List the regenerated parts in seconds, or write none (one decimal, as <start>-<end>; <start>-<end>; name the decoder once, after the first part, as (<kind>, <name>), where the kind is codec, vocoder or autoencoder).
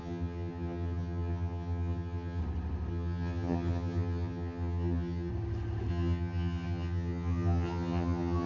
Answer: 0.0-2.4 (vocoder, HiFi-GAN); 2.9-5.3; 5.9-8.5